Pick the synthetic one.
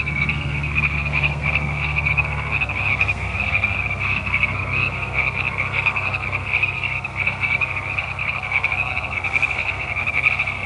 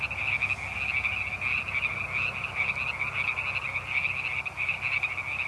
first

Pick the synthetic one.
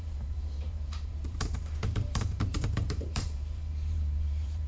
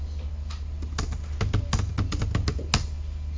first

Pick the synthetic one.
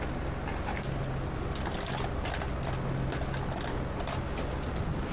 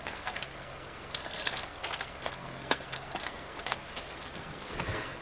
second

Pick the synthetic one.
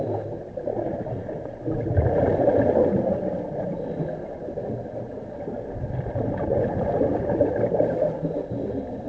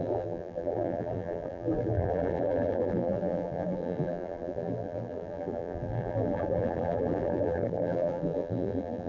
second